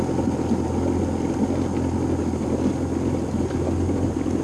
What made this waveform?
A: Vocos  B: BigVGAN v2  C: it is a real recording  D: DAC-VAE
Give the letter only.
C